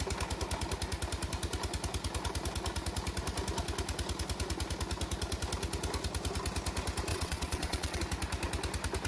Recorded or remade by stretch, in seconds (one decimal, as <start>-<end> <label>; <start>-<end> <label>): 0.0-7.1 recorded; 7.1-8.0 remade; 8.0-9.1 recorded